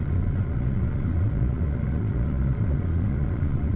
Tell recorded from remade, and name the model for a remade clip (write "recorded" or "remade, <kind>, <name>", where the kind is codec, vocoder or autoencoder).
remade, vocoder, Vocos